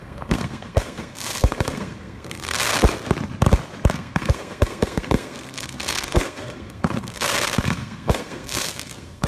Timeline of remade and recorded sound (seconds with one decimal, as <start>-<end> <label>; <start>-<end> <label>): 0.0-2.7 remade; 2.7-3.9 recorded; 3.9-9.3 remade